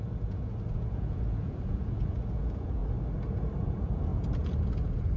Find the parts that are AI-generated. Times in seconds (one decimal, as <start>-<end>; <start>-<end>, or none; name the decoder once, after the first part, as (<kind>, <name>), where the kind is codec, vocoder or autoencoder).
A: 0.0-2.8 (vocoder, Vocos); 3.6-5.2

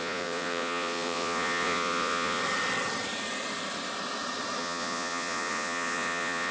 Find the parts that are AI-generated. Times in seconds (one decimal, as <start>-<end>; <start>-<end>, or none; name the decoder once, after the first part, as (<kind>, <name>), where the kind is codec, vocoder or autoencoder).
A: 0.0-2.4 (vocoder, Vocos); 4.6-6.5

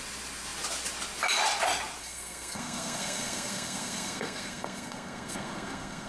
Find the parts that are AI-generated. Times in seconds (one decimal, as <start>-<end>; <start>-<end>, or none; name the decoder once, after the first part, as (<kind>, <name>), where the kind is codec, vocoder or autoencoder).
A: 2.0-6.1 (codec, SNAC)

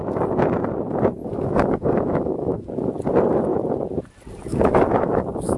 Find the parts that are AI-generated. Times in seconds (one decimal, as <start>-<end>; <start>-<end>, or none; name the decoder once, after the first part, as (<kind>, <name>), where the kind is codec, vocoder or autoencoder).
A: 1.2-2.7 (autoencoder, DAC-VAE); 4.5-5.6

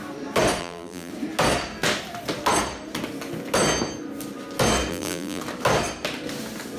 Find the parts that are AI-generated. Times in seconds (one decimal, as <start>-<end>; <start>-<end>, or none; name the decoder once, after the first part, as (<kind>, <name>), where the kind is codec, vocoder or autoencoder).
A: 0.6-1.1 (vocoder, BigVGAN v2); 4.9-5.4

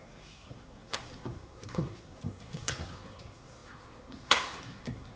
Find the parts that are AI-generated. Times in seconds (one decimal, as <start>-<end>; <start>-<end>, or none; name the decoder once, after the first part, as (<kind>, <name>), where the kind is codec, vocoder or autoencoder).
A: 0.0-5.2 (codec, SNAC)

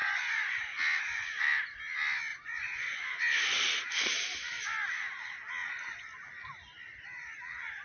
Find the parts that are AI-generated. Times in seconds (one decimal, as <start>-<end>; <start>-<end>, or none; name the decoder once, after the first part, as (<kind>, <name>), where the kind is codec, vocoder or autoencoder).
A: 0.0-0.6 (vocoder, Vocos); 2.3-3.0; 5.6-6.1

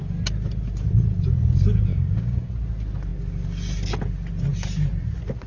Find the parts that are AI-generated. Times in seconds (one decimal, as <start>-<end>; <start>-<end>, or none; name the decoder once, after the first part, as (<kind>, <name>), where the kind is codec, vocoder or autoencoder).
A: 1.9-2.5 (codec, DAC)